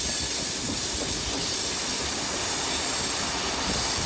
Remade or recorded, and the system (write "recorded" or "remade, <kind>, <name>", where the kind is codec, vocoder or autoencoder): recorded